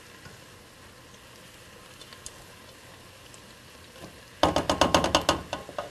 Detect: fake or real real